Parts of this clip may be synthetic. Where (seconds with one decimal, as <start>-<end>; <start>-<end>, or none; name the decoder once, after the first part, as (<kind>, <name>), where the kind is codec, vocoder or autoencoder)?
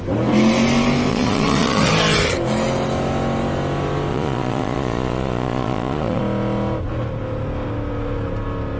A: 1.1-1.9 (vocoder, Vocos); 4.1-6.2